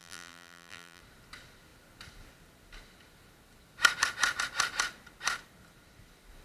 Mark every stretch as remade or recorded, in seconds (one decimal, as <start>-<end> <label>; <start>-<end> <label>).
0.0-1.0 remade; 1.0-6.4 recorded